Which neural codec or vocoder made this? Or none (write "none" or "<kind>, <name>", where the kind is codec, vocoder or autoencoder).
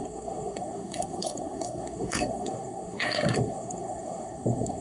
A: codec, SNAC